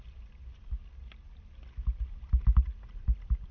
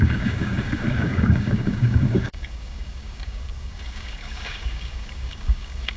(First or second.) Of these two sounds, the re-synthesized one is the second